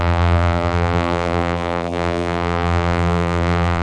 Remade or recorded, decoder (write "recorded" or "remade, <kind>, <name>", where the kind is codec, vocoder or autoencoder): remade, vocoder, BigVGAN v2